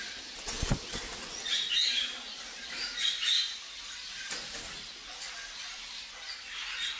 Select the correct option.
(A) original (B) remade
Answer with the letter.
A